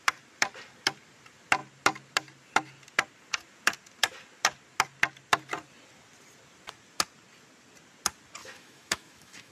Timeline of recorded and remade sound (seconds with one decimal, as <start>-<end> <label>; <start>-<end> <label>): 0.0-8.4 recorded; 8.4-9.5 remade